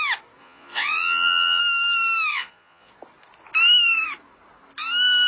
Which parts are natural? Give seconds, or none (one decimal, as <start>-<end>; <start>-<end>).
0.0-0.4; 1.6-2.3; 2.9-5.3